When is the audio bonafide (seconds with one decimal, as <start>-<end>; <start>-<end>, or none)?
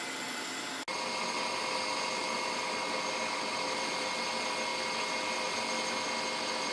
0.0-2.2; 4.1-6.7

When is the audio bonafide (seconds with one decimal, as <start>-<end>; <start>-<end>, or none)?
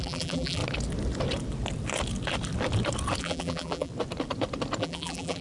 0.6-3.2; 3.9-4.8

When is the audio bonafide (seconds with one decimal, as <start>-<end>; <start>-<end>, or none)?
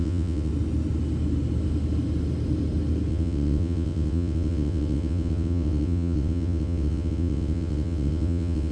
0.5-3.1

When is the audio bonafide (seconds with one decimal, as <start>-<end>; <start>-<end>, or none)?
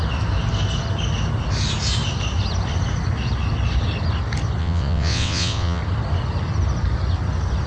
0.0-4.6; 5.8-7.7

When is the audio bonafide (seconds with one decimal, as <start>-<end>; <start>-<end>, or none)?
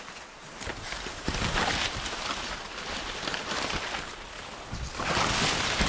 0.0-0.7; 4.1-5.9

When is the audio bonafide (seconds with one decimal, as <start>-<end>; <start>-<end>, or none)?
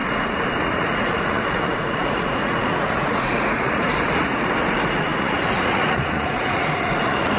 0.0-0.6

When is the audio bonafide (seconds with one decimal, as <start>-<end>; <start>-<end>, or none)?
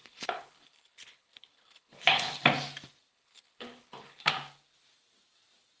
2.3-3.1; 4.3-5.8